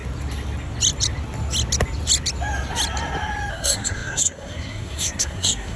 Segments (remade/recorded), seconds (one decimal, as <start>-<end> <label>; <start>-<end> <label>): 0.0-3.5 recorded; 3.5-5.8 remade

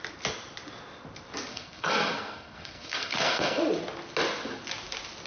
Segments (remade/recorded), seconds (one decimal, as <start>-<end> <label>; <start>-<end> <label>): 0.0-1.5 recorded; 1.5-3.6 remade; 3.6-5.3 recorded